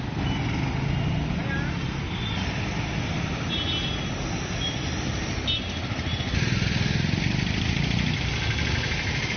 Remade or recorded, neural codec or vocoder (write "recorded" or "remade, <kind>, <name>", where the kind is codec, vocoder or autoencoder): recorded